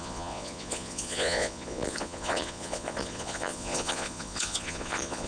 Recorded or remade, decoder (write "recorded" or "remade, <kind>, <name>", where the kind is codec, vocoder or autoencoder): remade, vocoder, Vocos